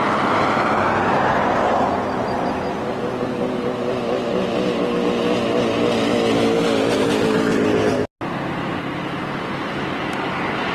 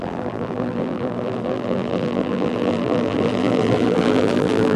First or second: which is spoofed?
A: second